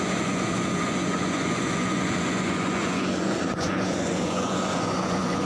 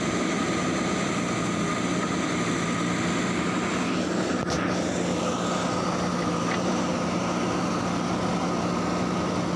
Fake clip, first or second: first